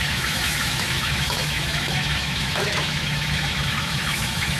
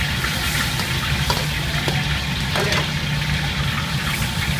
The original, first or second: second